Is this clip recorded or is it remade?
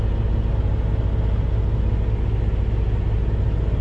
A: recorded